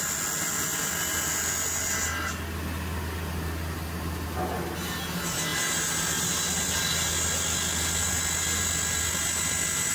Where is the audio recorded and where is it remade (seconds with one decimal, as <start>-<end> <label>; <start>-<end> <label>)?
0.0-9.9 recorded

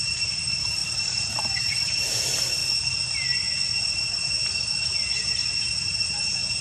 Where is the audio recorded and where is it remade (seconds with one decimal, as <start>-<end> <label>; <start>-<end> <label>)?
0.0-2.6 remade; 2.6-6.6 recorded

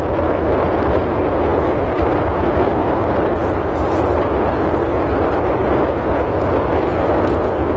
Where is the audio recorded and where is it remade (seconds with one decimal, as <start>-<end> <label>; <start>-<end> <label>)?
0.0-7.8 recorded

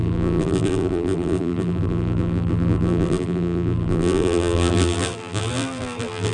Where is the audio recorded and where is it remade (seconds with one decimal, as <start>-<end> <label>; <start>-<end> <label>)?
0.0-6.3 remade

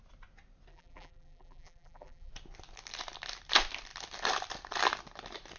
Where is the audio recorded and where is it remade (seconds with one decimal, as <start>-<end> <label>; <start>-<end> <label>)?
0.0-0.7 recorded; 0.7-2.3 remade; 2.3-5.6 recorded

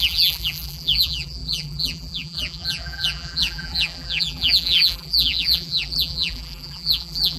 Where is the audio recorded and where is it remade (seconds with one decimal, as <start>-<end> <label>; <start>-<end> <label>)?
0.0-7.4 remade

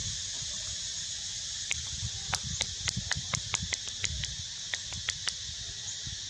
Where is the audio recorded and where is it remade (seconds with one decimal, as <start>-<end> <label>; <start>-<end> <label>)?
0.0-3.8 remade; 3.8-6.3 recorded

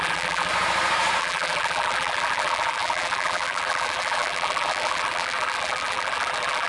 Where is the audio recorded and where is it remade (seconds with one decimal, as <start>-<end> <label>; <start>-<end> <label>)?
0.0-0.5 remade; 0.5-1.2 recorded; 1.2-6.7 remade